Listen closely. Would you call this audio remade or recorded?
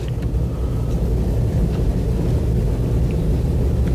recorded